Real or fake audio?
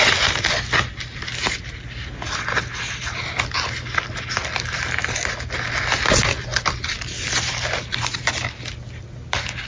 real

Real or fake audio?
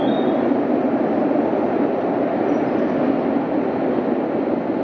real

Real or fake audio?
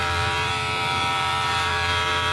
fake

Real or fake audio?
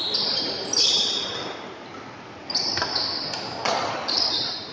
real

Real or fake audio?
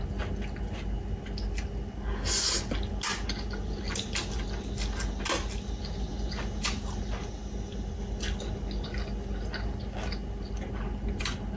real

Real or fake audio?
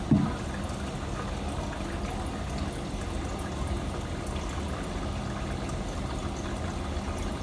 real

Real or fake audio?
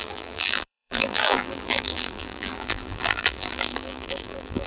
fake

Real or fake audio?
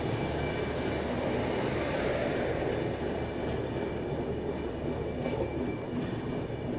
real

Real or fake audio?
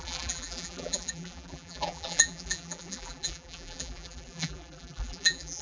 fake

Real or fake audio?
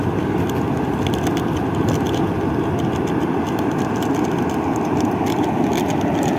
fake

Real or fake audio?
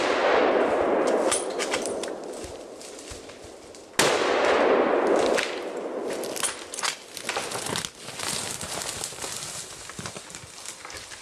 real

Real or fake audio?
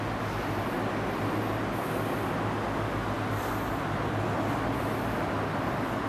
real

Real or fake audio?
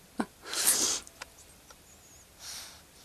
real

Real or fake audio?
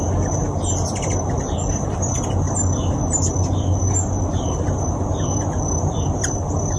real